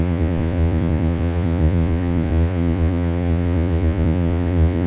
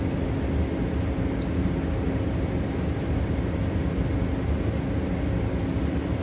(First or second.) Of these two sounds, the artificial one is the first